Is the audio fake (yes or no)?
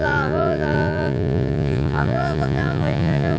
yes